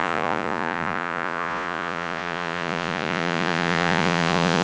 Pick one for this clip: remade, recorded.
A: remade